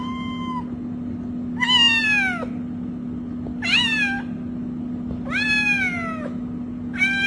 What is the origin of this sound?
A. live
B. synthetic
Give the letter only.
A